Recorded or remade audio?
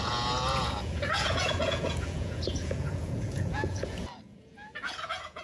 remade